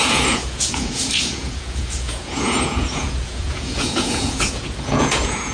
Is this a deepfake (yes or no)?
yes